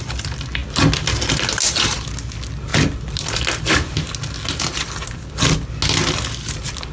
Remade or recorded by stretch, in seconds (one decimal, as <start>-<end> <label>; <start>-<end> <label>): 0.0-6.9 recorded